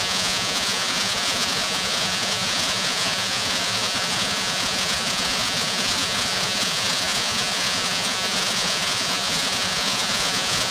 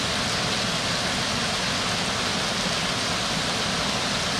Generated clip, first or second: first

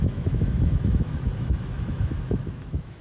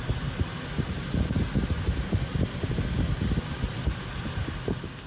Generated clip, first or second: first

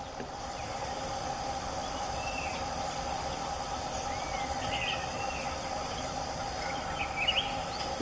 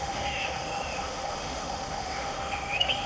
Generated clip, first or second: second